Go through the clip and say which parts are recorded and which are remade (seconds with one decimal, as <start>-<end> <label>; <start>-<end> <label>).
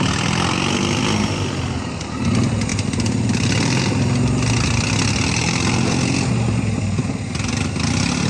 0.0-8.3 recorded